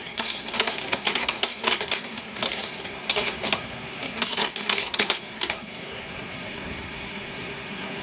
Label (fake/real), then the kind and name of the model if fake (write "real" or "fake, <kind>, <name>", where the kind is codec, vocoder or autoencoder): fake, codec, SNAC